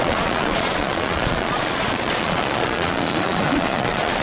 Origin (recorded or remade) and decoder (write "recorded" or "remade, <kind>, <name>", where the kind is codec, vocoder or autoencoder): remade, vocoder, Vocos